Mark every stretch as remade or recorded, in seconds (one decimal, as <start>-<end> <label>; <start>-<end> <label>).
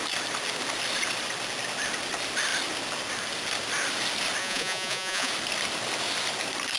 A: 0.0-4.4 recorded; 4.4-5.3 remade; 5.3-6.8 recorded